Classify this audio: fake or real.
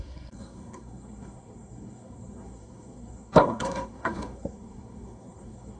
fake